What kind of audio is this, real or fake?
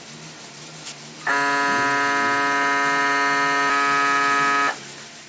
real